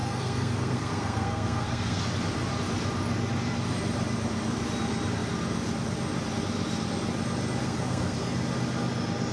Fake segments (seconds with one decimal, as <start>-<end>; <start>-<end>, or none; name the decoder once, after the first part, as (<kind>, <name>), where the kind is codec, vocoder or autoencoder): 0.0-2.0 (codec, SNAC); 7.6-8.3